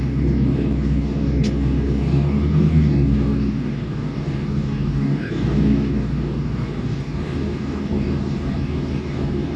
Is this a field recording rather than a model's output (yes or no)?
no